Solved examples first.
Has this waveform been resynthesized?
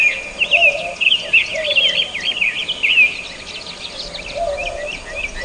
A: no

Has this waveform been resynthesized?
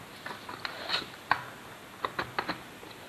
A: no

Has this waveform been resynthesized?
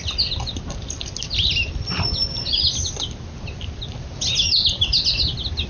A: no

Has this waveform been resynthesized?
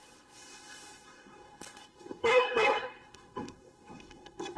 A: yes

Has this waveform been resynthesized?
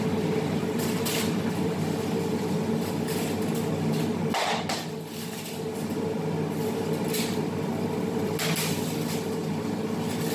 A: no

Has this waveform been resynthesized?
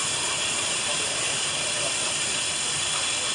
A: no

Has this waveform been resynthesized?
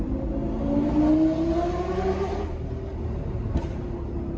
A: no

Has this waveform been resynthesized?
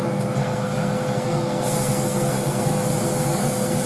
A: yes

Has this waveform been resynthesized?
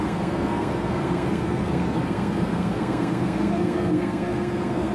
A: yes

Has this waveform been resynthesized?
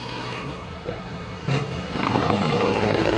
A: yes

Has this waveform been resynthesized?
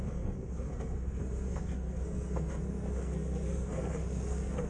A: yes